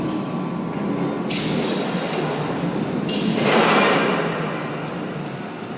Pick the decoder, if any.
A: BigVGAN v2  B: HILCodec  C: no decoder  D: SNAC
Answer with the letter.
C